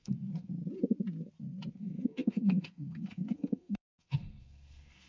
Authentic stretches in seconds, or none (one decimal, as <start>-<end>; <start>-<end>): 0.5-1.7